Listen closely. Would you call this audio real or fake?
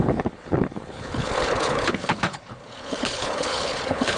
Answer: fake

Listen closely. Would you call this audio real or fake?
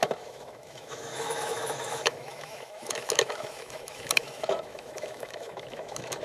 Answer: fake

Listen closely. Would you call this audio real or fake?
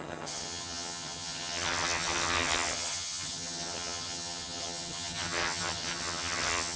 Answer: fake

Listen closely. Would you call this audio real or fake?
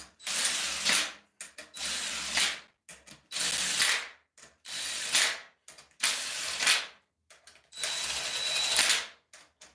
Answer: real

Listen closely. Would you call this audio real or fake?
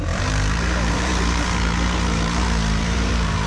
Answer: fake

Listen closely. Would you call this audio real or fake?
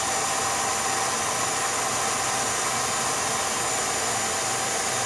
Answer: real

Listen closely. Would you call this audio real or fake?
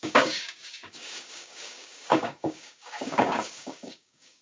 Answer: fake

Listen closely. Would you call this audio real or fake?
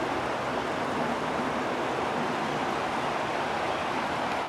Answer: real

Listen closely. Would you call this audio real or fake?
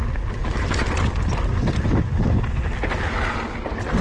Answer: real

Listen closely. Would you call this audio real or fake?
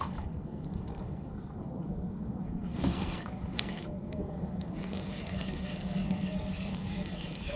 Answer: fake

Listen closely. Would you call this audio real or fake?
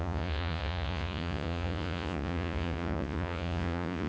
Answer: fake